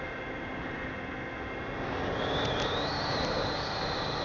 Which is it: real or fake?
real